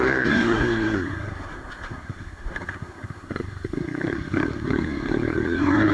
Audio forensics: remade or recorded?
remade